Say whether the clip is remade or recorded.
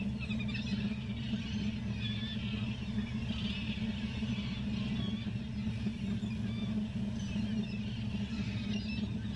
recorded